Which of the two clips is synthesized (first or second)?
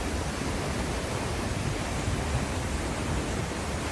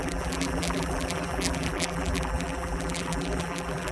second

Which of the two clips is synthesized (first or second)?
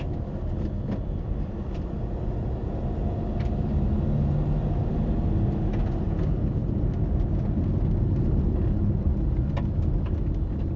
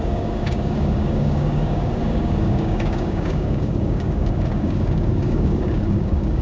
second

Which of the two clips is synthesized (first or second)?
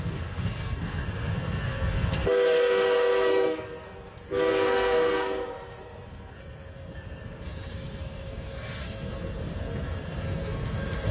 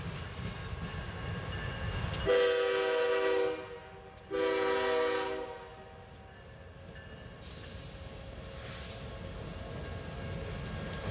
first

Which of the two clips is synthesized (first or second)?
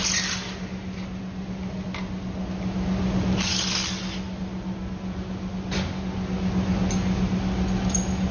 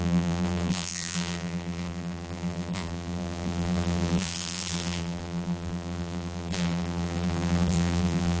second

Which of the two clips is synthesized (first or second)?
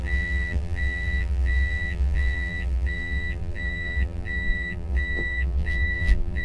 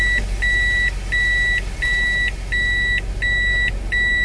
first